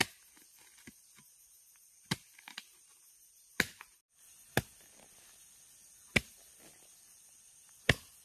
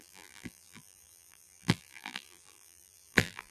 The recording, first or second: first